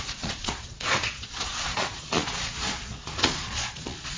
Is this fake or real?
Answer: fake